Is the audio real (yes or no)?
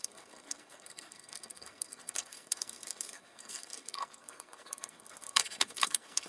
no